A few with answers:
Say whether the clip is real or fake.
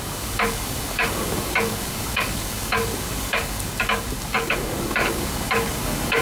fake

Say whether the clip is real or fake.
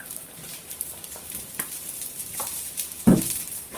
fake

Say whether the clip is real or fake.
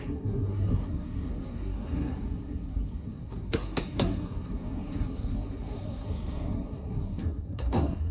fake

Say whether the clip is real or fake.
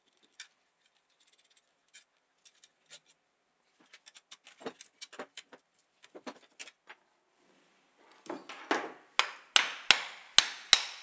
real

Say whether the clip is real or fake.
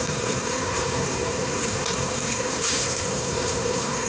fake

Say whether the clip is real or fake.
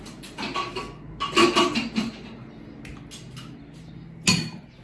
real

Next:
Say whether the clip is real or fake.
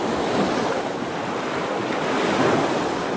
real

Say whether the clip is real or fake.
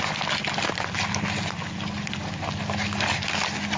real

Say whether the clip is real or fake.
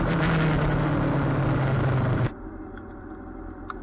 real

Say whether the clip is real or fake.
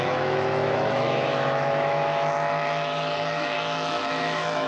fake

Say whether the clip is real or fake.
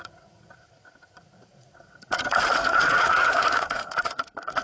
fake